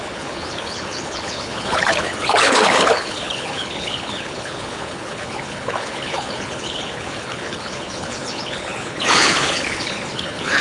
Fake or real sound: fake